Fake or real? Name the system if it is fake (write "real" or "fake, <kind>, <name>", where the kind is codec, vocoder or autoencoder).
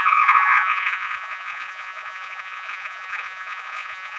fake, vocoder, Vocos